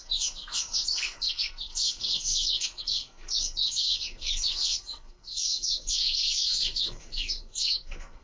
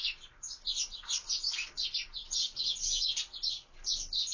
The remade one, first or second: first